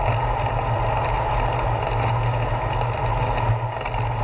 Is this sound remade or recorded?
recorded